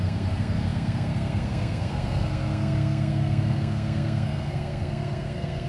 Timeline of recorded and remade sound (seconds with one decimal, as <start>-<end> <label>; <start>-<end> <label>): 0.0-5.7 remade